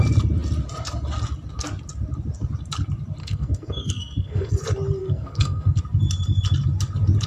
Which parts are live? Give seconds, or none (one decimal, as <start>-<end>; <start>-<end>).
0.0-3.2; 4.5-5.0; 5.8-7.3